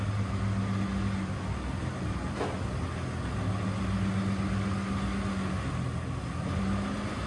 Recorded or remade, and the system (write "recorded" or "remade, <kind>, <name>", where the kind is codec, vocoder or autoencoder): recorded